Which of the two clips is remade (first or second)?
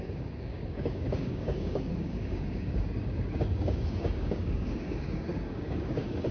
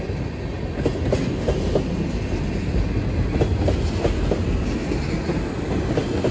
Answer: first